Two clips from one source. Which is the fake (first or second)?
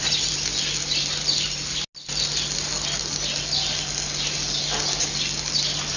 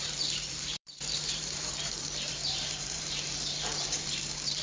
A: second